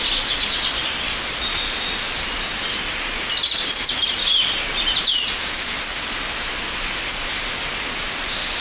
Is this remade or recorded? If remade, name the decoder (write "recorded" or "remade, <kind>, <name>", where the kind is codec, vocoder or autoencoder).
recorded